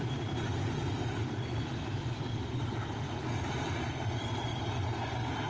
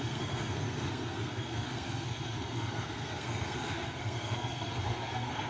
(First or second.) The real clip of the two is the first